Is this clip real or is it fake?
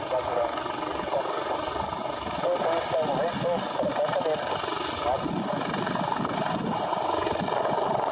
real